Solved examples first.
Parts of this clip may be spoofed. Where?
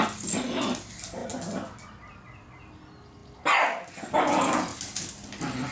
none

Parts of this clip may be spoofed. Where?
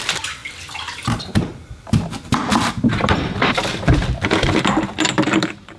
0.0-5.8 (vocoder, BigVGAN v2)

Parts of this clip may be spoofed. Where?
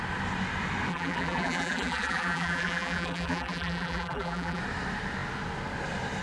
0.9-4.6 (vocoder, BigVGAN v2)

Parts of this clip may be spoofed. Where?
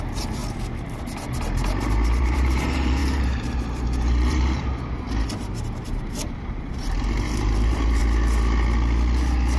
0.0-0.4 (vocoder, BigVGAN v2); 2.2-8.0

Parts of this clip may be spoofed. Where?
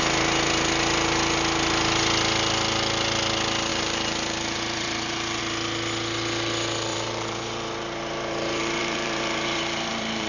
3.7-5.4 (vocoder, BigVGAN v2); 6.9-10.3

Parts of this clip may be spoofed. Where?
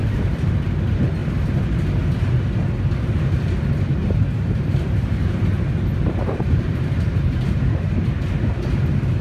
0.0-0.5 (vocoder, BigVGAN v2); 4.0-7.9